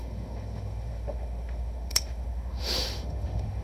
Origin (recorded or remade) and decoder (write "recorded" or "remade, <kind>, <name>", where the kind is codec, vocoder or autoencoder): remade, autoencoder, DAC-VAE